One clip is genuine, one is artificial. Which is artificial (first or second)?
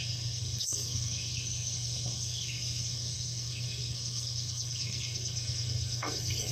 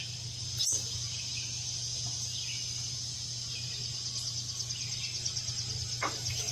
first